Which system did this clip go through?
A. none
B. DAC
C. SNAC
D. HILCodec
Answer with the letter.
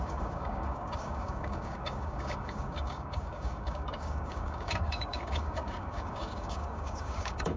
B